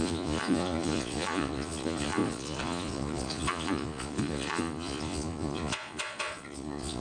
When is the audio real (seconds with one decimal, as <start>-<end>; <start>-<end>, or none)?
none